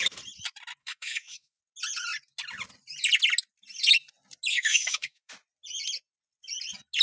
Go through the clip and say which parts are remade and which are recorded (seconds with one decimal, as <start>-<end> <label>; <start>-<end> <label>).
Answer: 0.0-0.8 recorded; 0.8-1.6 remade; 1.6-4.5 recorded; 4.5-5.3 remade; 5.3-7.0 recorded